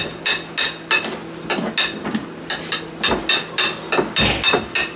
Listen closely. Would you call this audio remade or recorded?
recorded